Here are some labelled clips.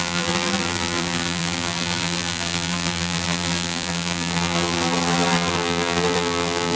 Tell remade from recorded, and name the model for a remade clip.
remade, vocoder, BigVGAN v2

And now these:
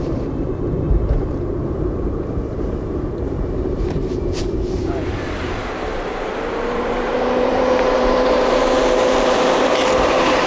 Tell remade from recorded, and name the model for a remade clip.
remade, vocoder, BigVGAN v2